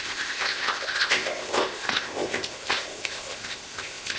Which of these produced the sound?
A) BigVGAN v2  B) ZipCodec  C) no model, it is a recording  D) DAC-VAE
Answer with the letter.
B